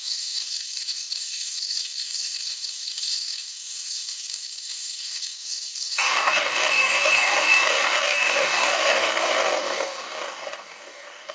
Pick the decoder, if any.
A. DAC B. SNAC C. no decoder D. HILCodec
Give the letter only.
A